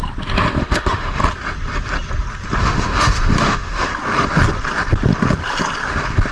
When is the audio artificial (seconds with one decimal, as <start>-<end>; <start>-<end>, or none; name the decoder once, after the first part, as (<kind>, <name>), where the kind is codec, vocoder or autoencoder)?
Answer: 0.6-1.2 (autoencoder, DAC-VAE); 2.6-3.9